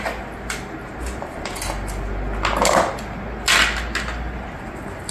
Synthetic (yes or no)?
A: no